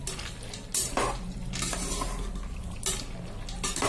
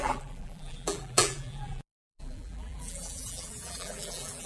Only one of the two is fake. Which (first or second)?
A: second